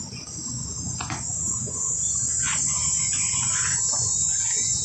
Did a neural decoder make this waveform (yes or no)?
yes